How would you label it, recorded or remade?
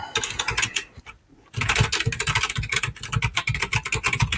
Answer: recorded